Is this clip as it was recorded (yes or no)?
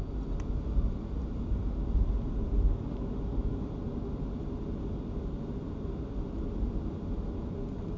yes